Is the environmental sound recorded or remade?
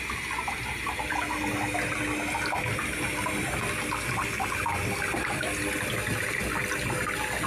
recorded